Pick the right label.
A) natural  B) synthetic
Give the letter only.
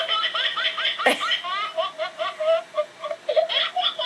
A